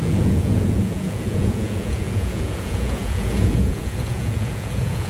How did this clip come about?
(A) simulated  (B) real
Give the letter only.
A